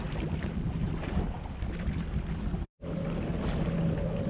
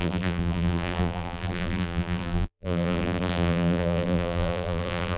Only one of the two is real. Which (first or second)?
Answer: first